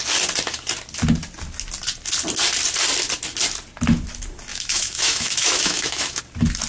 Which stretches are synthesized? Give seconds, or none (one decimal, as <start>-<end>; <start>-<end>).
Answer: 4.5-6.2